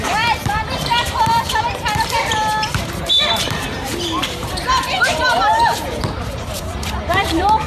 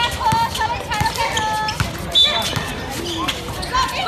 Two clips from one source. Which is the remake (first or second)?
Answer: first